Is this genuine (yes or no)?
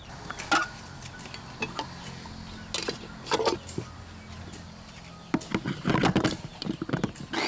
yes